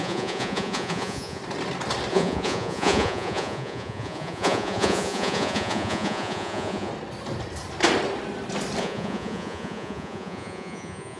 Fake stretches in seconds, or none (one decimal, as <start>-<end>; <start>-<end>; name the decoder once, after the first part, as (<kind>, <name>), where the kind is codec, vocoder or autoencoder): 0.0-1.4 (vocoder, Vocos); 2.1-6.9; 8.8-11.2